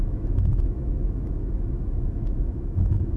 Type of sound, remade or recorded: remade